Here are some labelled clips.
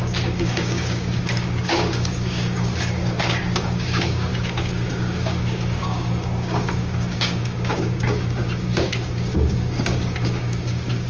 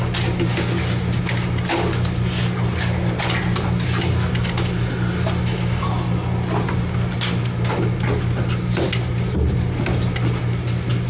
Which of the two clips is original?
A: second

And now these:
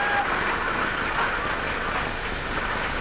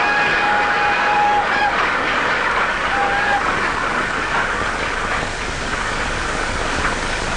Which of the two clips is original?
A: first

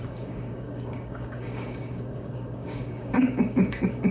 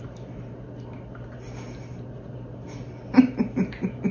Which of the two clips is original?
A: second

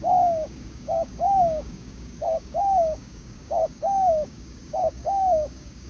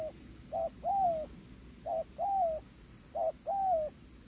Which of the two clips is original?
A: second